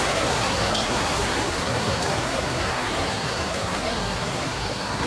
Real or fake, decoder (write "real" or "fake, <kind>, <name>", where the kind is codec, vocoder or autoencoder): fake, codec, SNAC